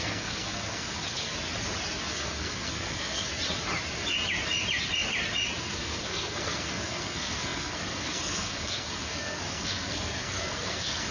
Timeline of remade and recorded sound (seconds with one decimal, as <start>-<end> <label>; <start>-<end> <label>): 0.0-1.3 remade; 1.3-2.0 recorded; 2.0-3.3 remade; 3.3-5.6 recorded; 5.6-11.1 remade